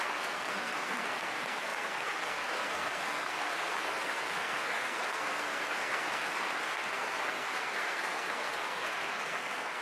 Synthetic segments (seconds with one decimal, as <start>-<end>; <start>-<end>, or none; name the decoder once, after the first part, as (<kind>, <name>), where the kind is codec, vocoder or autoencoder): 0.0-9.8 (codec, SNAC)